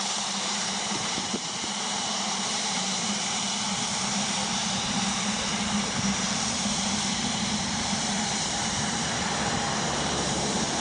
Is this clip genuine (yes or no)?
no